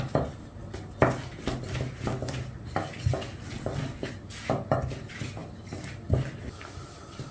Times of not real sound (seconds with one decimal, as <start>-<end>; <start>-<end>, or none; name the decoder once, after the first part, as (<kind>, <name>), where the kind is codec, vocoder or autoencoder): 5.4-6.0 (vocoder, BigVGAN v2)